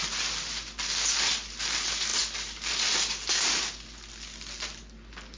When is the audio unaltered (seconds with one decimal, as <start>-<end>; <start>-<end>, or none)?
0.0-5.4